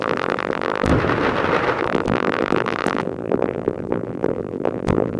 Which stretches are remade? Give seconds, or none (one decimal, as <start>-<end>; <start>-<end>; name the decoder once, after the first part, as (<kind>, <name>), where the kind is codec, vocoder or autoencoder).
0.0-0.9 (vocoder, BigVGAN v2); 1.8-5.2